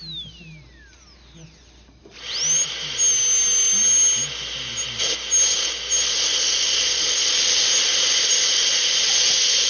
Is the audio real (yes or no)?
yes